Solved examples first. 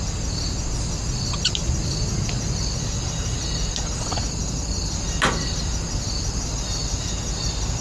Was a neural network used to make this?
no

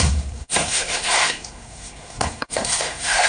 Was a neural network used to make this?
yes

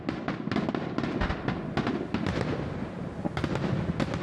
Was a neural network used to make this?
no